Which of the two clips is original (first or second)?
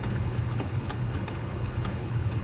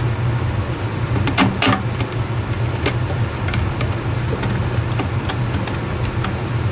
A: second